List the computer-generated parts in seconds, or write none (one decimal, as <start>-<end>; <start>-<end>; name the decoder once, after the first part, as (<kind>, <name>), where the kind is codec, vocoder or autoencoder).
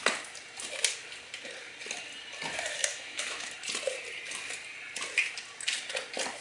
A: 2.8-3.5 (autoencoder, DAC-VAE)